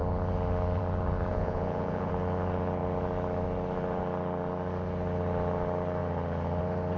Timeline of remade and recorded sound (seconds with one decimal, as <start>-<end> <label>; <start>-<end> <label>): 0.0-1.3 recorded; 1.3-2.1 remade; 2.1-7.0 recorded